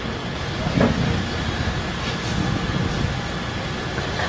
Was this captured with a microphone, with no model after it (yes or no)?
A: yes